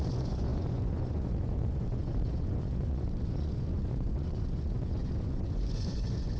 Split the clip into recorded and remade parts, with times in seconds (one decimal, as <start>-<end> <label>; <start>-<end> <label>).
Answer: 0.0-6.4 remade

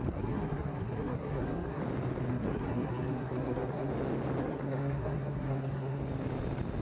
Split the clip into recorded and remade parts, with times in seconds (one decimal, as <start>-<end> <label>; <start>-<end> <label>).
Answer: 0.0-1.8 remade; 1.8-2.3 recorded; 2.3-3.9 remade; 3.9-4.4 recorded; 4.4-6.0 remade; 6.0-6.8 recorded

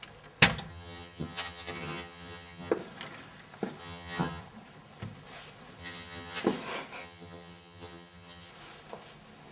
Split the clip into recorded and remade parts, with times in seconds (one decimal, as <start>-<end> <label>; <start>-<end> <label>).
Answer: 0.0-0.7 recorded; 0.7-2.7 remade; 2.7-3.8 recorded; 3.8-4.4 remade; 4.4-5.8 recorded; 5.8-6.4 remade; 6.4-7.0 recorded; 7.0-8.5 remade; 8.5-9.5 recorded